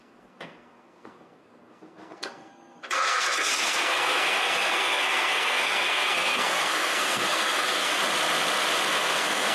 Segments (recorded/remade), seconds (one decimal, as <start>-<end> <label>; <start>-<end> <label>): 0.0-8.0 remade; 8.0-8.9 recorded; 8.9-9.5 remade